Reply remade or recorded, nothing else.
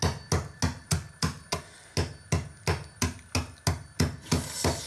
recorded